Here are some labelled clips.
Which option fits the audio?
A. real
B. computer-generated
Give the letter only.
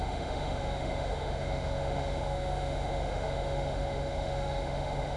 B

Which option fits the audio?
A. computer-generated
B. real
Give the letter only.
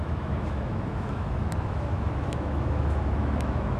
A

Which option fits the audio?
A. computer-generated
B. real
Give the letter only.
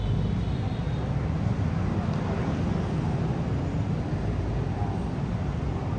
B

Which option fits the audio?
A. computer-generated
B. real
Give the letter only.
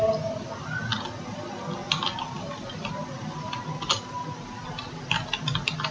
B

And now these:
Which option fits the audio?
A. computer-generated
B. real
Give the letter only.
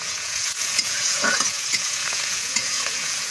A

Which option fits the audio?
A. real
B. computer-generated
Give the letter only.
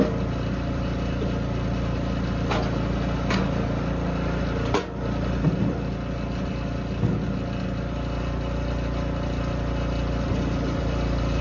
A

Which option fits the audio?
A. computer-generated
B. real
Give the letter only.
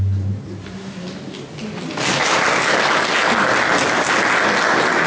B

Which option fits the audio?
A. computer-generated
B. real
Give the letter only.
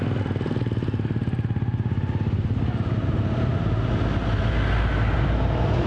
B